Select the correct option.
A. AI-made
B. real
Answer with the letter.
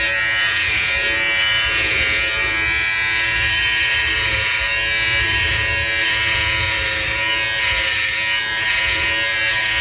A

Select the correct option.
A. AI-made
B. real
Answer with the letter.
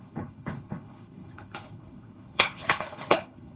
A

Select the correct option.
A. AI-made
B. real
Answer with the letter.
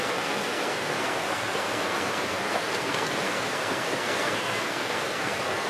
A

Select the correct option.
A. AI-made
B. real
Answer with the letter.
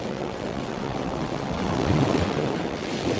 A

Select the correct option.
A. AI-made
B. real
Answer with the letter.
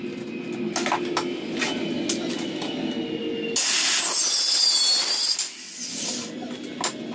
B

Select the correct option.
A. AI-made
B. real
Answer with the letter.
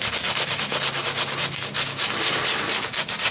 B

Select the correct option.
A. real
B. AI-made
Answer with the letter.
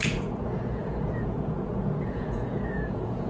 B